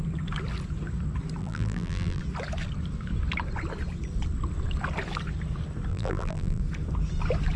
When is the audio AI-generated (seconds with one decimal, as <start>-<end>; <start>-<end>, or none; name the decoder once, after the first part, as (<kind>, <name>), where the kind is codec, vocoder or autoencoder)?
1.4-2.2 (vocoder, BigVGAN v2); 5.9-6.6